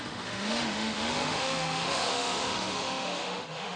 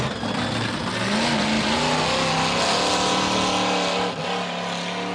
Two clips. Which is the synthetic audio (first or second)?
first